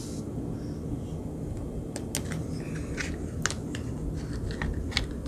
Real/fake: real